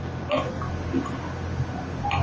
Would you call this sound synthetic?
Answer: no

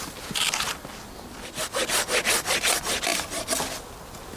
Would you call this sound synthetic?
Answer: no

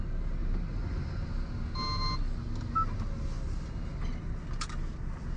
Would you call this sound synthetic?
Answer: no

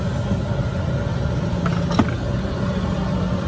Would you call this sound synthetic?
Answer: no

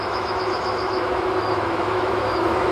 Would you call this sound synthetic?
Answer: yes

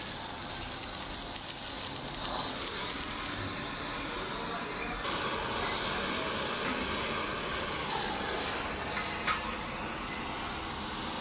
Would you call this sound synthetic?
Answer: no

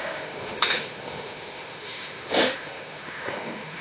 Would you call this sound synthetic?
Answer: yes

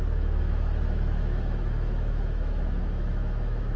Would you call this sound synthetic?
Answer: yes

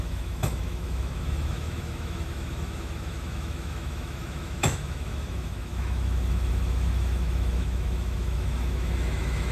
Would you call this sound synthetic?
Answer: yes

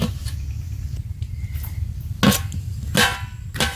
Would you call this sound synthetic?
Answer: no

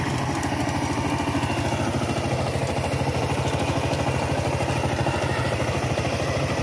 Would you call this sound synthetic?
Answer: no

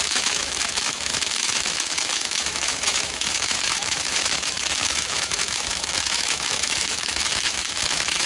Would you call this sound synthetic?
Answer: yes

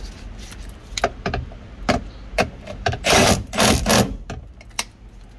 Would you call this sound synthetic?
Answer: no